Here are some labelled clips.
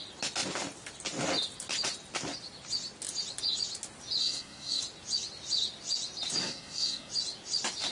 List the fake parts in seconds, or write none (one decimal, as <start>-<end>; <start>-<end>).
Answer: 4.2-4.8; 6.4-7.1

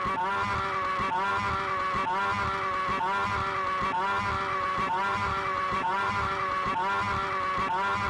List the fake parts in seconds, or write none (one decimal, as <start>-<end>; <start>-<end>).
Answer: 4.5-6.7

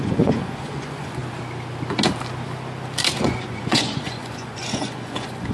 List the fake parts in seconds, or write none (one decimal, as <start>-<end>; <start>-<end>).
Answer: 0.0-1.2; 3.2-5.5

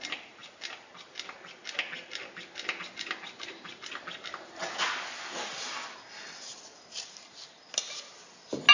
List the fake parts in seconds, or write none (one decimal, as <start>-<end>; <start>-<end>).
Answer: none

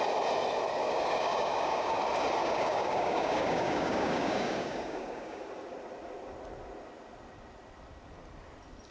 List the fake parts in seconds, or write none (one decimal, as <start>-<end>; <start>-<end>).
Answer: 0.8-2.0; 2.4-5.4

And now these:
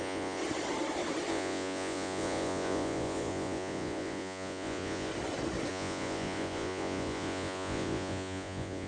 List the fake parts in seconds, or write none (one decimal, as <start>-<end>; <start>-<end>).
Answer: 0.0-0.4; 1.3-5.1; 5.7-8.9